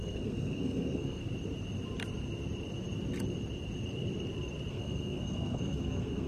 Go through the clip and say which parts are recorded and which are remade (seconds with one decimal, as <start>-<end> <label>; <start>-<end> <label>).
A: 0.0-1.2 remade; 1.2-4.7 recorded; 4.7-6.3 remade